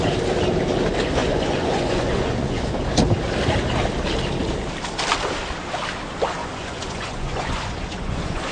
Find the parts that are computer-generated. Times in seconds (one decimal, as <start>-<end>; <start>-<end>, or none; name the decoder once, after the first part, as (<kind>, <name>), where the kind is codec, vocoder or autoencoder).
1.2-2.6 (vocoder, Vocos); 6.4-8.5